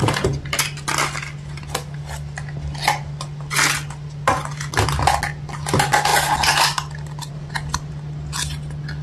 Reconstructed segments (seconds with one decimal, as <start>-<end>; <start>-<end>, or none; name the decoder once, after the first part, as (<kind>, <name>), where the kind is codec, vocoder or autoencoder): none